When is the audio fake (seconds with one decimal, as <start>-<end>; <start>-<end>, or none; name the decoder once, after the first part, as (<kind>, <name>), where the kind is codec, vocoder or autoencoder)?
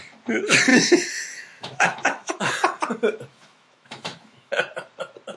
0.7-2.5 (autoencoder, DAC-VAE); 3.3-4.6